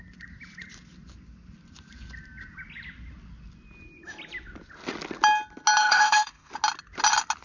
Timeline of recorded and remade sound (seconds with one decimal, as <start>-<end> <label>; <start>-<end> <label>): 0.0-5.8 recorded; 5.8-6.5 remade; 6.5-7.4 recorded